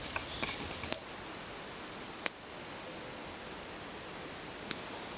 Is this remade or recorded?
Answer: recorded